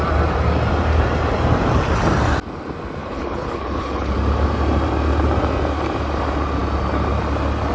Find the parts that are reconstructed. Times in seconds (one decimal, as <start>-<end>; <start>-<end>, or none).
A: 3.0-4.1